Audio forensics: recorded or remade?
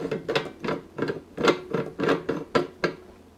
recorded